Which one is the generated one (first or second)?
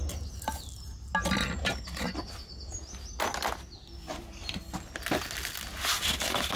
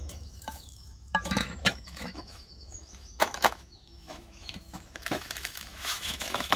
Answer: second